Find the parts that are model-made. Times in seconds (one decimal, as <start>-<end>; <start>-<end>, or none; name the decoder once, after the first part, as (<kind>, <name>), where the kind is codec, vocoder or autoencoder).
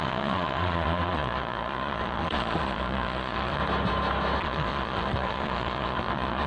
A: 0.0-3.6 (vocoder, Vocos); 4.4-6.5